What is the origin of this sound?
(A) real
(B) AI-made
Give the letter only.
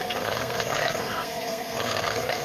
B